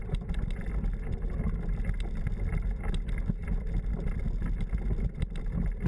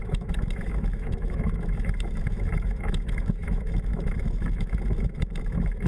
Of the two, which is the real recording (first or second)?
first